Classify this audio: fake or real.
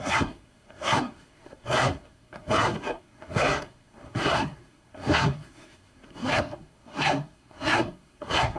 fake